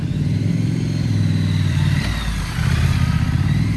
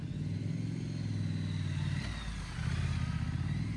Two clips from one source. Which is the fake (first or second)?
first